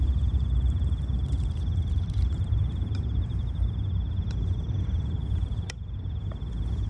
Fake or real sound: fake